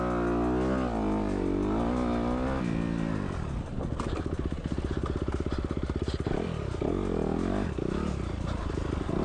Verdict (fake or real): real